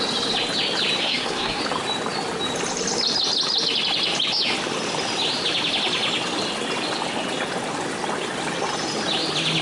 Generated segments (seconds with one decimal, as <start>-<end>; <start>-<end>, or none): 1.0-1.6